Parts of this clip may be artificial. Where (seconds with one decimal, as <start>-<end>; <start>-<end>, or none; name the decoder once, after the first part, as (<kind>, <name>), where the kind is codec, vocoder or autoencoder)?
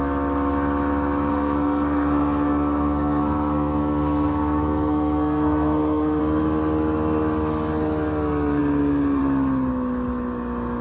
1.3-6.2 (codec, SNAC)